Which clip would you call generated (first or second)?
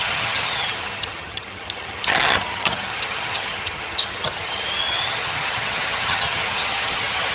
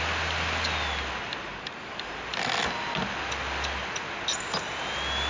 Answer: first